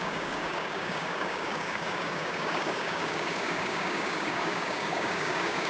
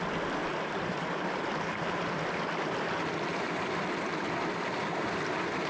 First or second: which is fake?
first